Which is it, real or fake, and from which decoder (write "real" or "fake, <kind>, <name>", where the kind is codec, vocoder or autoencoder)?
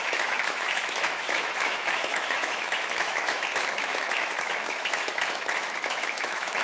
fake, autoencoder, DAC-VAE